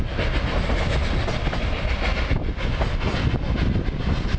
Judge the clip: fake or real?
real